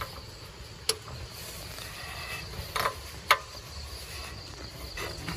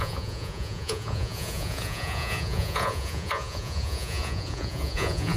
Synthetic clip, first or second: second